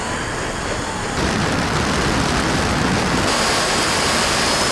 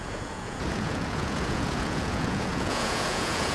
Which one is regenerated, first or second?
second